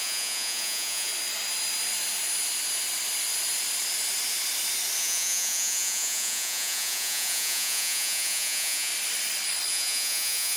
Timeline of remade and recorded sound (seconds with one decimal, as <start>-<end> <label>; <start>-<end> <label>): 0.0-1.1 remade; 1.1-5.0 recorded; 5.0-8.9 remade; 8.9-9.7 recorded; 9.7-10.6 remade